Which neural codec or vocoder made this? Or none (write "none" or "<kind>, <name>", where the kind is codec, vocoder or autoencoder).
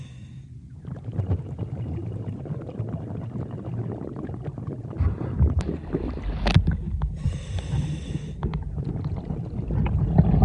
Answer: none